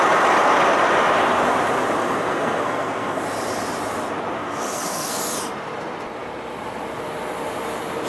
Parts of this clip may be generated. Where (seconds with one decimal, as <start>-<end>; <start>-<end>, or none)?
2.0-3.2; 4.4-5.2